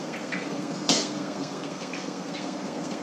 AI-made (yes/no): yes